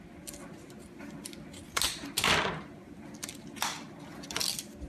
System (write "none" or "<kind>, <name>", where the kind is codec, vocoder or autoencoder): none